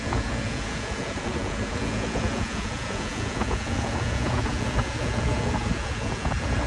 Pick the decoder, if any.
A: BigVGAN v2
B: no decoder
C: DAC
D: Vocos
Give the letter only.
D